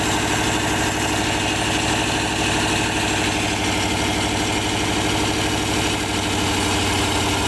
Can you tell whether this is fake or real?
real